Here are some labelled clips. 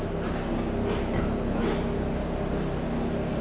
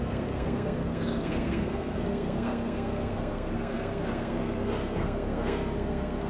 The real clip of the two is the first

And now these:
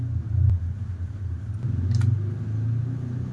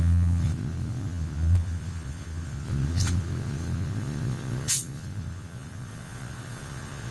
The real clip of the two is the first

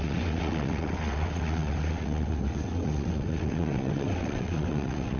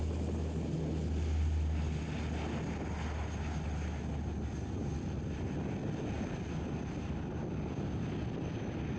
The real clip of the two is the second